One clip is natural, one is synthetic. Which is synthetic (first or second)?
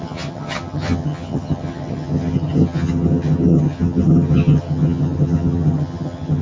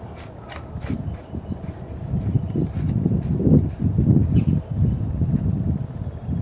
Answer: first